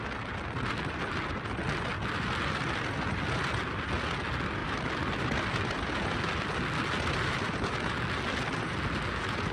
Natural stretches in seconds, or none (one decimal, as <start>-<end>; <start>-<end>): 0.0-4.6; 5.7-9.5